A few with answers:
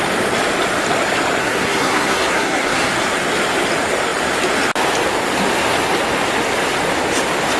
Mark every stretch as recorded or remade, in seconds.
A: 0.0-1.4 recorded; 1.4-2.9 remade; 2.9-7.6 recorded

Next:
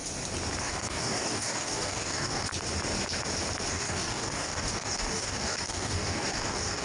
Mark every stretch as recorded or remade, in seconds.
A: 0.0-0.6 recorded; 0.6-2.5 remade; 2.5-3.7 recorded; 3.7-6.8 remade

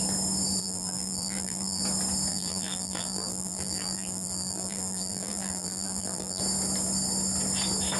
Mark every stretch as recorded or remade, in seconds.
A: 0.0-0.6 recorded; 0.6-1.8 remade; 1.8-2.3 recorded; 2.3-6.4 remade; 6.4-8.0 recorded

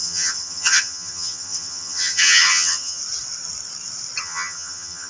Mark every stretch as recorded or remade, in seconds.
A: 0.0-3.0 remade; 3.0-4.2 recorded; 4.2-5.1 remade

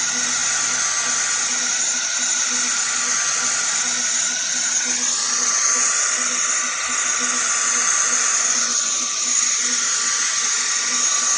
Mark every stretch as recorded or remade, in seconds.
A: 0.0-8.3 recorded; 8.3-9.5 remade; 9.5-11.4 recorded

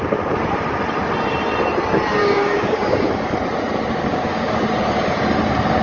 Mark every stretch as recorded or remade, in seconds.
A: 0.0-2.2 recorded; 2.2-3.1 remade; 3.1-4.1 recorded; 4.1-4.6 remade; 4.6-5.8 recorded

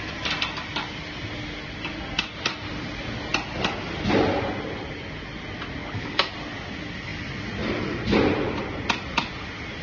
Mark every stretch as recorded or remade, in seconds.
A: 0.0-5.8 recorded; 5.8-6.3 remade; 6.3-9.8 recorded

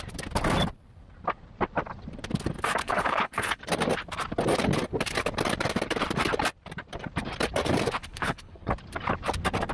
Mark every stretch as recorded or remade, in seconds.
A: 0.0-2.8 recorded; 2.8-3.6 remade; 3.6-8.0 recorded; 8.0-8.7 remade; 8.7-9.7 recorded